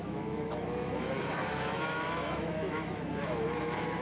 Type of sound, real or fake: fake